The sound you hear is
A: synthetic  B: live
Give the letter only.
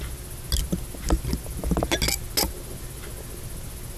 B